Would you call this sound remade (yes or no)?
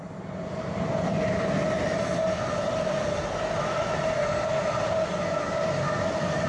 no